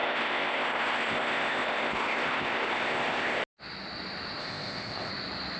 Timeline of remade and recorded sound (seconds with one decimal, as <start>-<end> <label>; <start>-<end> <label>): 0.0-3.4 remade; 3.4-4.4 recorded; 4.4-5.1 remade; 5.1-5.6 recorded